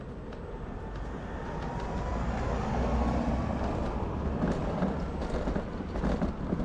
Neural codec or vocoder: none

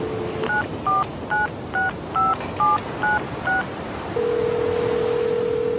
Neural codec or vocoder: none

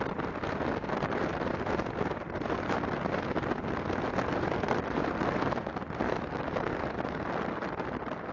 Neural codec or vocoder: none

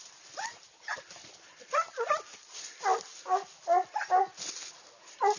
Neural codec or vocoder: none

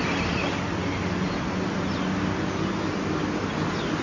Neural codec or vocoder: none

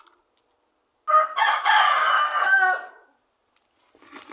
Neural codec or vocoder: none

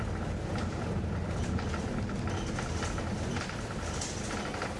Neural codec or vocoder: none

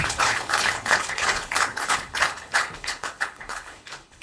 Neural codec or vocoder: codec, HILCodec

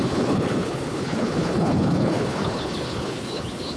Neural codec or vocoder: codec, HILCodec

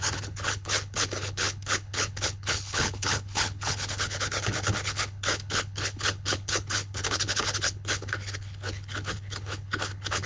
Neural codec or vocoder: codec, HILCodec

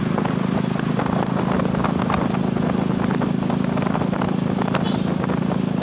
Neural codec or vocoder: none